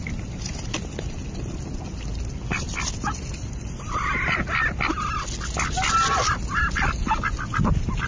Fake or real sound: real